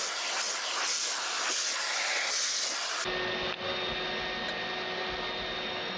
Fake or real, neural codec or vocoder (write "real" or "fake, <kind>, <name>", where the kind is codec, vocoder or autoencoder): real